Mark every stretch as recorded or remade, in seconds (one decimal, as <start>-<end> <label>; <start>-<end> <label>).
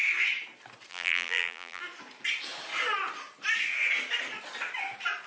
0.0-0.9 recorded; 0.9-1.8 remade; 1.8-5.3 recorded